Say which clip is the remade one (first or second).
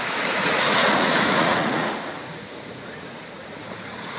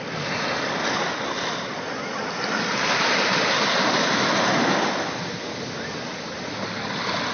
first